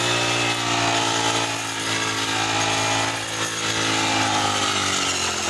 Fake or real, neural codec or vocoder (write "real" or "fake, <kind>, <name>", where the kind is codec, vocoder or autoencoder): real